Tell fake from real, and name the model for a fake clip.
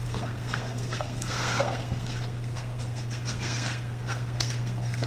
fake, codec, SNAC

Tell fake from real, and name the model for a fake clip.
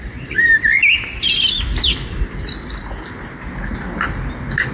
real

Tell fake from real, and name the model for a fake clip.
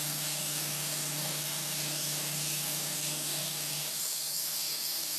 fake, codec, DAC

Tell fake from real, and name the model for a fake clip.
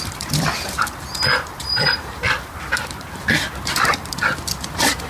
fake, vocoder, BigVGAN v2